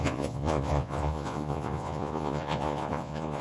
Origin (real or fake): fake